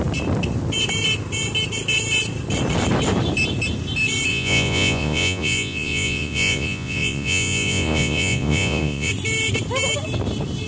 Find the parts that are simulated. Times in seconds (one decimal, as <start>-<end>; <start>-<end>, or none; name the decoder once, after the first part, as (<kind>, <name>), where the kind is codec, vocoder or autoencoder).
4.3-9.1 (vocoder, Vocos)